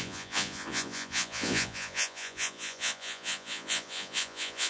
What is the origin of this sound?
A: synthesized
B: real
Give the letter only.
A